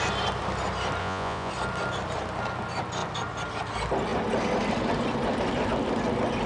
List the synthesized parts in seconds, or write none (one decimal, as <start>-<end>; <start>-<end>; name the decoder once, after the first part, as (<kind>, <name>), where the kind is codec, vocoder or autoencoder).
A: 1.0-1.5 (vocoder, Vocos)